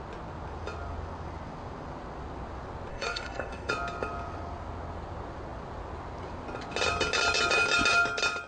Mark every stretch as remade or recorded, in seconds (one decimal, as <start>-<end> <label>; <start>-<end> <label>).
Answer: 0.0-2.9 recorded; 2.9-3.7 remade; 3.7-8.5 recorded